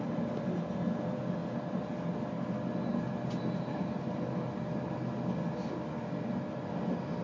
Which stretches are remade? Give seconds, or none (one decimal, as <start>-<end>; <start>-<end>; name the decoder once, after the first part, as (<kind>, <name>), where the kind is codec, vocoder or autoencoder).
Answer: none